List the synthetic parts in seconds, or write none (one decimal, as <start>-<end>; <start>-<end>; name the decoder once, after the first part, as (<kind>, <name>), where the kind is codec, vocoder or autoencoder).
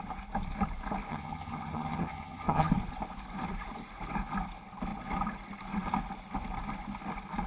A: 1.1-2.7 (vocoder, HiFi-GAN)